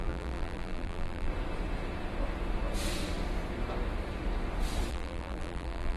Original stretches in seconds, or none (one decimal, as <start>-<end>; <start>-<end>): 1.3-4.9

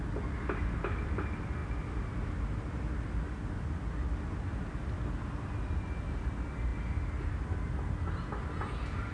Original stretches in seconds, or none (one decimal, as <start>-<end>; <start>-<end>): 0.0-9.1

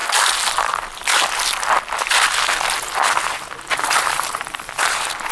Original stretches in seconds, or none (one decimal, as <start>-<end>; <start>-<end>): 0.0-0.6; 1.1-3.8